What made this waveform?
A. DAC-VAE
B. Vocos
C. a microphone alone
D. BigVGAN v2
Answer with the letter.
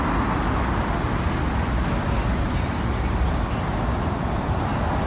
C